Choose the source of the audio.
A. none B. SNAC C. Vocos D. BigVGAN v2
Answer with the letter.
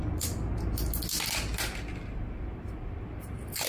A